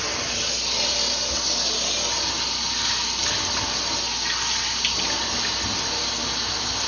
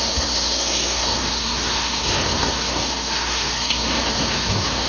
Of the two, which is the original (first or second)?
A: first